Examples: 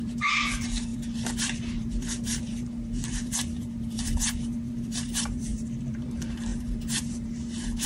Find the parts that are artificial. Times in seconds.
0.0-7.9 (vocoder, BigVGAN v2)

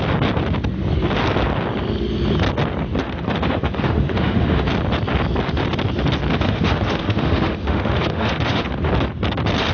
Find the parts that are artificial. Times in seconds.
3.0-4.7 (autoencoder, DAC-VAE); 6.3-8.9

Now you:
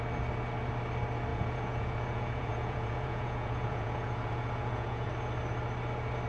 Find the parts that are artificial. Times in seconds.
1.3-5.1 (vocoder, Vocos)

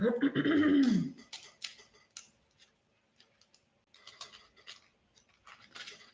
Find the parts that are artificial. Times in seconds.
none

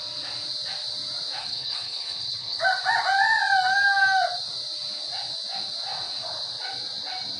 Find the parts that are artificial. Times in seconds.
1.4-2.6 (codec, HILCodec)